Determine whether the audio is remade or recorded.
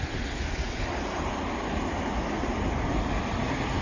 recorded